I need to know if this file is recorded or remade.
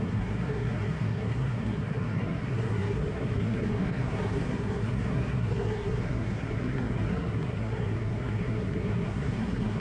remade